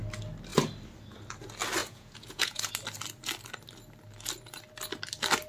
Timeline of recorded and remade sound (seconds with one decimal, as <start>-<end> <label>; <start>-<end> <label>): 0.0-1.8 recorded; 1.8-2.7 remade; 2.7-5.5 recorded